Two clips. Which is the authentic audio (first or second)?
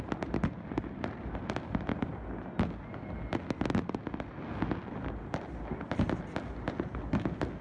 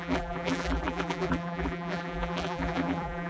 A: first